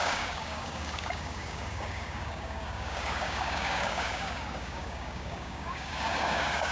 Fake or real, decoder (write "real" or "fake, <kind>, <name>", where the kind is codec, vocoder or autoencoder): fake, codec, DAC